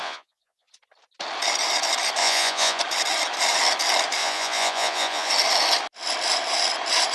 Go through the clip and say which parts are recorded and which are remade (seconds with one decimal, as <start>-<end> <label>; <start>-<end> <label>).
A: 0.0-0.7 remade; 0.7-2.2 recorded; 2.2-2.8 remade; 2.8-4.2 recorded; 4.2-5.3 remade; 5.3-7.1 recorded